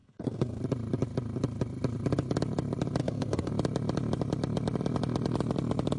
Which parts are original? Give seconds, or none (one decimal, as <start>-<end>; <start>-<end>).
0.6-3.0; 3.5-6.0